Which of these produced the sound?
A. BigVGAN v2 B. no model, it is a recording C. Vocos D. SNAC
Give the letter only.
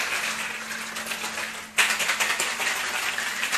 B